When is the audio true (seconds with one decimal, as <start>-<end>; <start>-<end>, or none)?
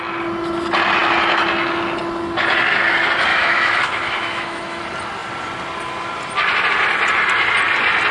0.0-3.3; 4.8-8.1